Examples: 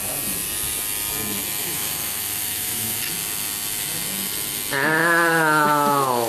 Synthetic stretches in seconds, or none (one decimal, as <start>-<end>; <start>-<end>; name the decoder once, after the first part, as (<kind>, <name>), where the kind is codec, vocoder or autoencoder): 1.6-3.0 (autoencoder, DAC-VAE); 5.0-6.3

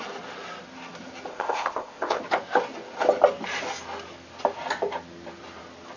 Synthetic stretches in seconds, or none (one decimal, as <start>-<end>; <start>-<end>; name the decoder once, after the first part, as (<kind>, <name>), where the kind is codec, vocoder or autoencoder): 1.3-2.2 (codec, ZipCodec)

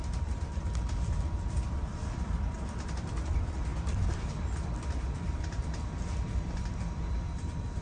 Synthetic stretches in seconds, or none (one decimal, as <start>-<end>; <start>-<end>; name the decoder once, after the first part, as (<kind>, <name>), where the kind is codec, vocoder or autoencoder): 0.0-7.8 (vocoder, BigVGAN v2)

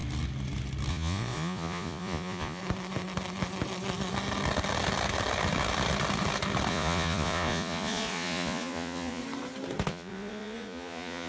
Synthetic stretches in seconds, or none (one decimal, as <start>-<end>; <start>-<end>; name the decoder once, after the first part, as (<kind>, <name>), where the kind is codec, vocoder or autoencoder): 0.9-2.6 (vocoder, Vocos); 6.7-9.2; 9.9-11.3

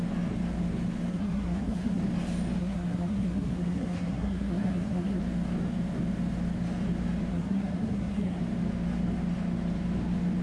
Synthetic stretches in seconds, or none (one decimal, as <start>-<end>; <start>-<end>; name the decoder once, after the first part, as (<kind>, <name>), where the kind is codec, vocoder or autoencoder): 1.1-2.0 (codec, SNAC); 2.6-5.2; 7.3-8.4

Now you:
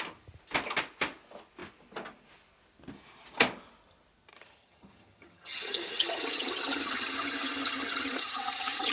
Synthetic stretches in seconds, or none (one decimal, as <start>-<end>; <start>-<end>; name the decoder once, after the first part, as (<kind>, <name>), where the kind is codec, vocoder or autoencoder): 4.3-8.9 (vocoder, HiFi-GAN)

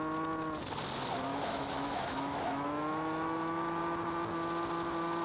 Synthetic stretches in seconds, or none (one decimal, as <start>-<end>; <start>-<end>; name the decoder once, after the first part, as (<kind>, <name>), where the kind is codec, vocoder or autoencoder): 1.3-3.8 (autoencoder, DAC-VAE)